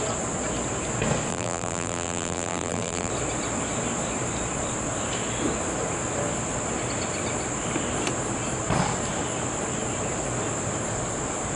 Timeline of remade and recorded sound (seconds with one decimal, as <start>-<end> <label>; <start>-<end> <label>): 0.0-1.3 recorded; 1.3-3.1 remade; 3.1-11.6 recorded